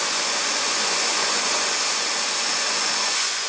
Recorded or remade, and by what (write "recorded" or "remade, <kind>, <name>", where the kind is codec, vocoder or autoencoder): remade, vocoder, Vocos